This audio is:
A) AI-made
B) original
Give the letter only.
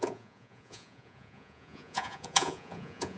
A